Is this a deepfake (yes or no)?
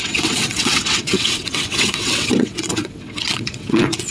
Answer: yes